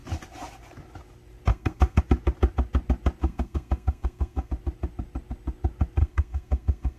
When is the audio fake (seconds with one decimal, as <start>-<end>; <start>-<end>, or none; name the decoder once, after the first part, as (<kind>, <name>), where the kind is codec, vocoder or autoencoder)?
1.5-2.0 (codec, SNAC); 3.2-4.5; 6.0-7.0